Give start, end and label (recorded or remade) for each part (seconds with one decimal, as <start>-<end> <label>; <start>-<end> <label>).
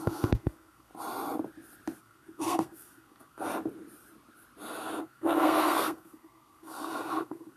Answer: 0.0-0.9 remade; 0.9-2.0 recorded; 2.0-3.5 remade; 3.5-5.0 recorded; 5.0-7.6 remade